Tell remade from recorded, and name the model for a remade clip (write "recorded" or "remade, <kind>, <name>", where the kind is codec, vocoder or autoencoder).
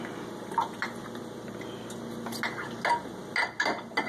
recorded